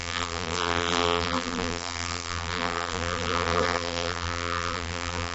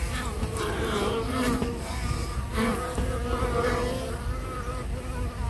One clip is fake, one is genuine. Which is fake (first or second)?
first